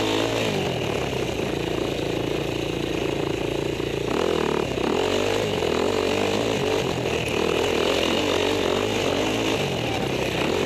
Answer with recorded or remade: recorded